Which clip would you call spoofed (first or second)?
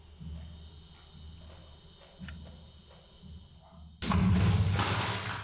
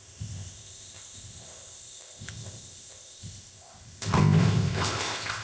second